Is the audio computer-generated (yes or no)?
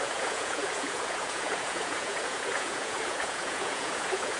yes